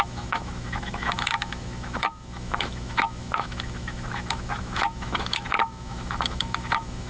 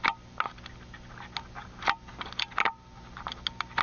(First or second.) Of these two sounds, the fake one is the first